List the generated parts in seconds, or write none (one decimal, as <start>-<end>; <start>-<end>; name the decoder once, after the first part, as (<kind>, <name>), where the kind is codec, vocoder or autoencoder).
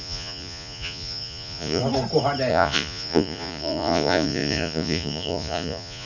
0.0-1.8 (vocoder, Vocos); 2.5-6.1